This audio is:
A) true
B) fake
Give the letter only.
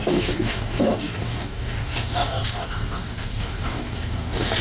B